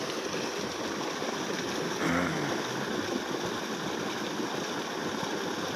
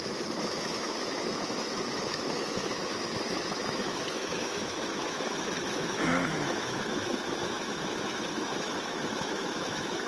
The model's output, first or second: second